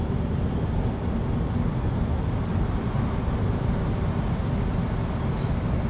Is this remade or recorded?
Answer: recorded